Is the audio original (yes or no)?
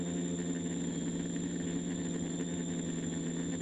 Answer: yes